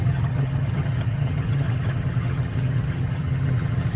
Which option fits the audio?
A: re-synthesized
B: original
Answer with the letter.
A